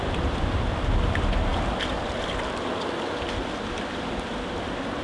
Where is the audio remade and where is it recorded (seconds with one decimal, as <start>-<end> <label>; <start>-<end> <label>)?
0.0-1.5 remade; 1.5-4.5 recorded; 4.5-5.0 remade